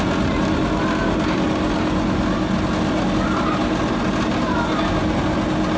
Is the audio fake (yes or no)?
no